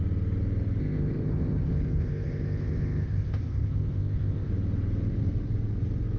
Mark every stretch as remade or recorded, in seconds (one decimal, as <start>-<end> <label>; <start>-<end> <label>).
0.0-0.8 recorded; 0.8-4.5 remade; 4.5-6.2 recorded